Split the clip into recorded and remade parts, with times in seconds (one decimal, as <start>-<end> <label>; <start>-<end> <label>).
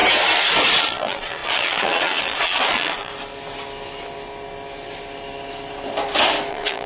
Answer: 0.0-0.8 recorded; 0.8-3.1 remade; 3.1-6.5 recorded; 6.5-6.9 remade